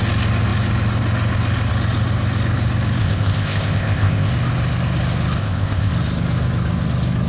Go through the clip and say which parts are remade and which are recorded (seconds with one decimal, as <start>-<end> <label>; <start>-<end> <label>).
0.0-3.0 recorded; 3.0-4.3 remade; 4.3-5.4 recorded; 5.4-5.9 remade; 5.9-7.3 recorded